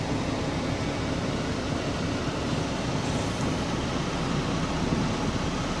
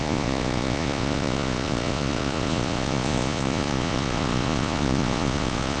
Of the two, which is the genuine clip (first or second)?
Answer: first